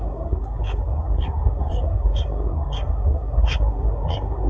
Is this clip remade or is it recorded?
remade